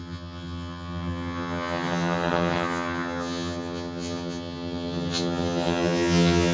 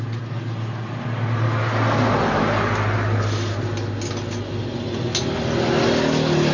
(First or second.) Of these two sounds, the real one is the second